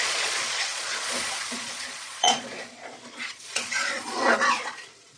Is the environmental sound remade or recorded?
remade